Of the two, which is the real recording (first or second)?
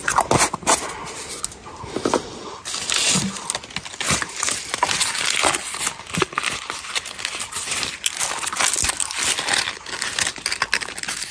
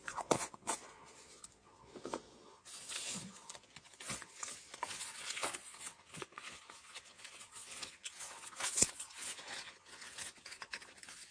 first